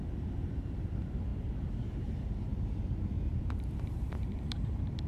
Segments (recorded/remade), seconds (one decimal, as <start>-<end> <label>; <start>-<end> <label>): 0.0-2.5 remade; 2.5-3.4 recorded; 3.4-5.1 remade